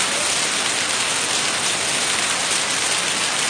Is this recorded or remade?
recorded